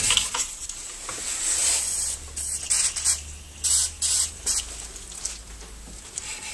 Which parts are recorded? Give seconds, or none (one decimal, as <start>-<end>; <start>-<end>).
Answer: 0.0-6.5